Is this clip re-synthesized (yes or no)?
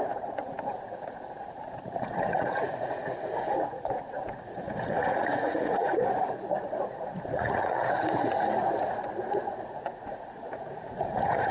yes